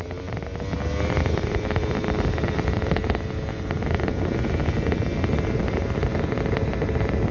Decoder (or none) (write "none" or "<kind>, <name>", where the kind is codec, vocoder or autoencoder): none